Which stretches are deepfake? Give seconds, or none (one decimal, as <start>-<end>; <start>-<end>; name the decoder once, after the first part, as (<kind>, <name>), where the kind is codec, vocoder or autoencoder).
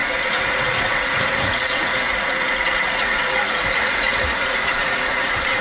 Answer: 0.0-5.6 (vocoder, Vocos)